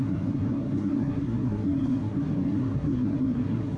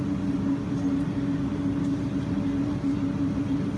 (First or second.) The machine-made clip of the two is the first